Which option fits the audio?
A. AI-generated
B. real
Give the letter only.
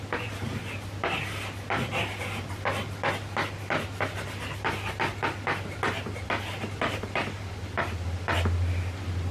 B